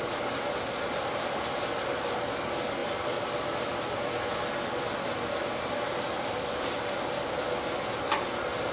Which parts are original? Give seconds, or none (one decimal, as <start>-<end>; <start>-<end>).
0.0-8.7